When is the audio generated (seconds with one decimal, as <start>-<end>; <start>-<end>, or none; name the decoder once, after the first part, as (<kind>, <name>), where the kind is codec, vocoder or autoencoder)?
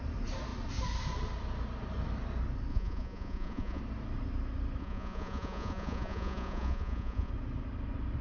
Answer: 2.7-3.8 (vocoder, Vocos); 4.8-7.3